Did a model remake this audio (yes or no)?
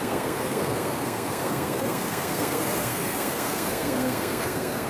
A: yes